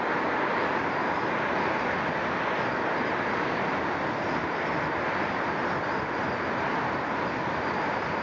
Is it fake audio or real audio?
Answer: real